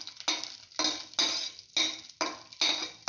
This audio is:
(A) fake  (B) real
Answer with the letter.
B